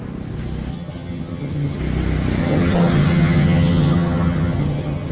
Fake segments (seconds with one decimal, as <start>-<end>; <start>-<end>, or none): 0.7-1.8; 2.4-5.1